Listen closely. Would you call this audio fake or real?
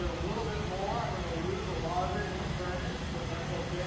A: real